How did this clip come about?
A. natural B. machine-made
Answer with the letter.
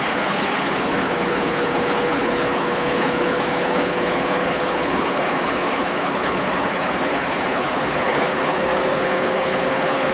B